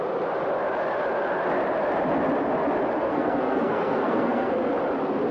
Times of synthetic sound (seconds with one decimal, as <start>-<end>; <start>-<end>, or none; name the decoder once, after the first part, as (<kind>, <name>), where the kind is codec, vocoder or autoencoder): 3.0-4.7 (codec, SNAC)